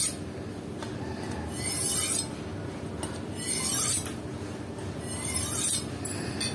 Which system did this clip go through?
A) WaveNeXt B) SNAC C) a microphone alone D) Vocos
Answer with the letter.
C